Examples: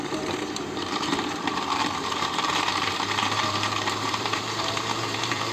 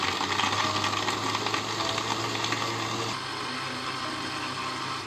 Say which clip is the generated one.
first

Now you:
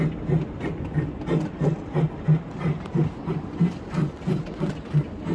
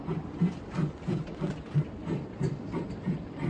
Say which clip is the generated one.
second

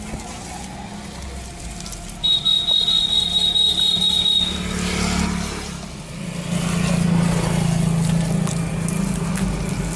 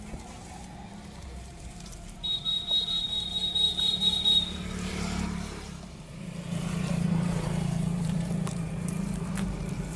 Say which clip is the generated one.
second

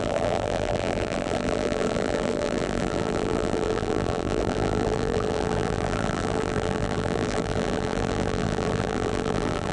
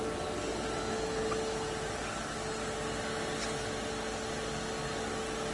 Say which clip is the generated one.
first